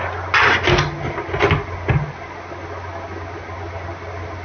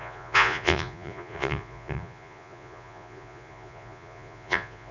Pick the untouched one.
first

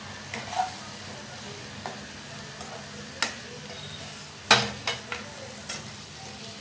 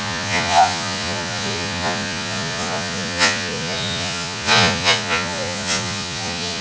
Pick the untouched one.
first